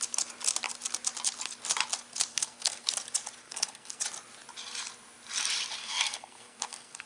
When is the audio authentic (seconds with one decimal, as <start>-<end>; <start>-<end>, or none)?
0.0-2.3; 2.9-3.4; 4.0-5.8